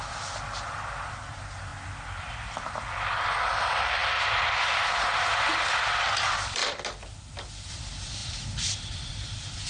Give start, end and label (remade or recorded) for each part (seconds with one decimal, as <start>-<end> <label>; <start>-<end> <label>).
0.0-1.7 remade; 1.7-2.2 recorded; 2.2-6.6 remade; 6.6-7.7 recorded; 7.7-9.7 remade